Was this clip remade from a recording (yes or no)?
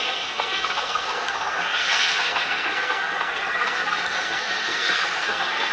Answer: yes